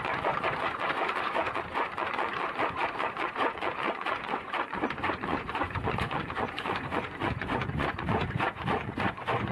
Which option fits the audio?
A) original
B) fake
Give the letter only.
B